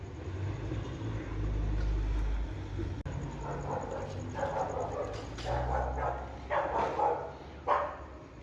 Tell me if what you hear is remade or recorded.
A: recorded